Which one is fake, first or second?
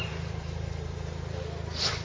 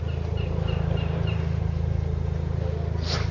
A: first